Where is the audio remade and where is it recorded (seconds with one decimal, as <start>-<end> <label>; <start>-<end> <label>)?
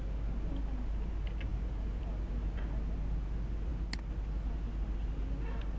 0.0-5.8 recorded